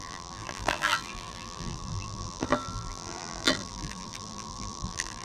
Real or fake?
fake